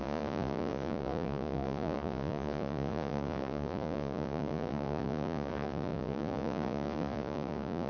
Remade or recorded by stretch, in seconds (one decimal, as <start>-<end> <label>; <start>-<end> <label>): 0.0-7.9 remade